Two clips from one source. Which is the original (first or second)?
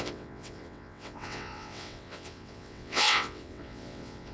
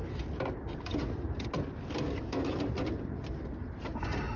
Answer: second